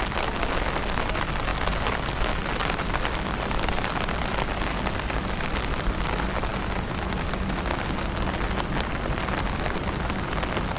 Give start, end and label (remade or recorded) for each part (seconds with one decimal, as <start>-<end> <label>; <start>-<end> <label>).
0.0-10.8 recorded